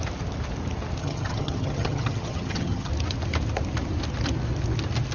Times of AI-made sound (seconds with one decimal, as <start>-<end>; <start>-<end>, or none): 1.0-2.9